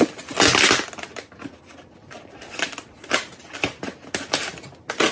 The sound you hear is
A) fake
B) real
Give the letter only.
B